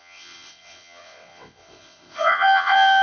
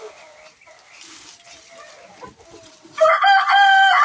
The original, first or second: second